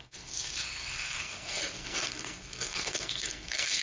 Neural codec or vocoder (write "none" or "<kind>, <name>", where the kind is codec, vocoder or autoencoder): codec, SNAC